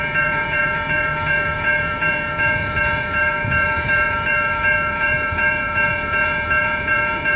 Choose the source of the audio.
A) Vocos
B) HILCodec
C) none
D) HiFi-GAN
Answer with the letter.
A